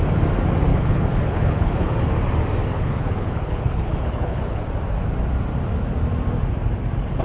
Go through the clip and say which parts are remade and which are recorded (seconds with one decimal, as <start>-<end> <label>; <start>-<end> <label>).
0.0-0.7 recorded; 0.7-1.9 remade; 1.9-2.7 recorded; 2.7-4.6 remade; 4.6-7.2 recorded